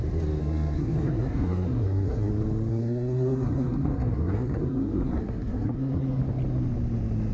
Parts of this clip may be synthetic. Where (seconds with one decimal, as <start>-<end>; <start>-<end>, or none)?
0.4-2.3; 2.7-6.2